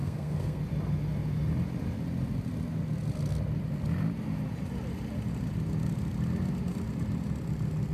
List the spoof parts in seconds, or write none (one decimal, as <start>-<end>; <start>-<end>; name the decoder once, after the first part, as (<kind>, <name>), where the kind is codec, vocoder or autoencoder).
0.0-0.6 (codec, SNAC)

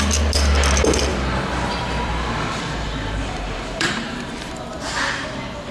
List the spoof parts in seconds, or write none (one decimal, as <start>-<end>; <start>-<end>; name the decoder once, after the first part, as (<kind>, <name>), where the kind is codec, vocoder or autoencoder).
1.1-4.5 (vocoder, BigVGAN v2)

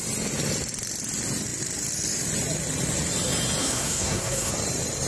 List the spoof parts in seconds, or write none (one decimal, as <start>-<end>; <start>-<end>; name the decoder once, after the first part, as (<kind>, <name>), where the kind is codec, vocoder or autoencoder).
3.6-4.5 (codec, SNAC)

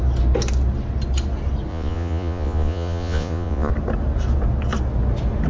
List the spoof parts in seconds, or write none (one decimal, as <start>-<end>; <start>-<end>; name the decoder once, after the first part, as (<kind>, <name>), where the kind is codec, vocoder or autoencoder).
1.7-3.7 (vocoder, Vocos)